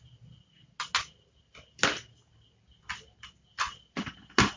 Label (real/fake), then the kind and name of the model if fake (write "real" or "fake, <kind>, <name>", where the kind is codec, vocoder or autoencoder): real